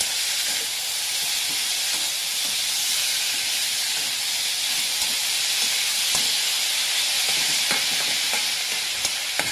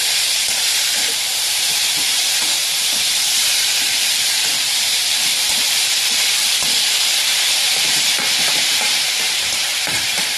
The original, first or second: first